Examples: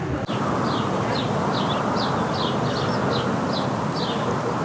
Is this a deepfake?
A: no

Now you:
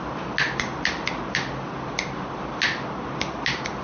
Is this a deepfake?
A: no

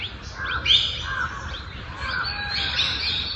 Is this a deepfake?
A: no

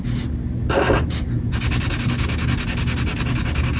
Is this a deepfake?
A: no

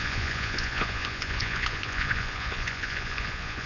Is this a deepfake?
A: yes